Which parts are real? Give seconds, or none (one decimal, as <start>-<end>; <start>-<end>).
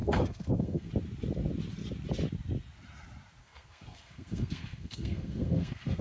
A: 0.9-3.4